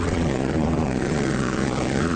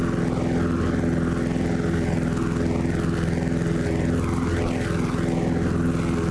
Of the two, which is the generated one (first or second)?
first